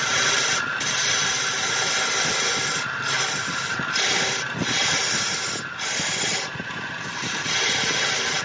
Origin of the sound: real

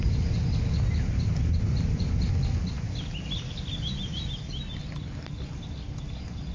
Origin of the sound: real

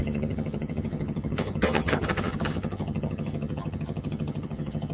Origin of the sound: fake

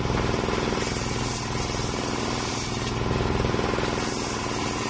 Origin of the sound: real